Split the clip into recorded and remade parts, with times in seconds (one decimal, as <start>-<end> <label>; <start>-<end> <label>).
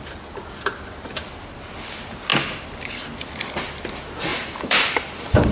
0.0-4.3 recorded; 4.3-5.5 remade